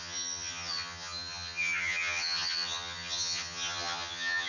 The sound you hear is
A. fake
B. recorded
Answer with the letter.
A